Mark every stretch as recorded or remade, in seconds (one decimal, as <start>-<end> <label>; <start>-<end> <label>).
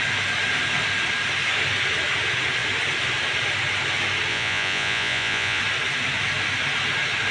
0.0-4.3 recorded; 4.3-5.6 remade; 5.6-7.3 recorded